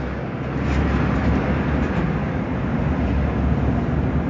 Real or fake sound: real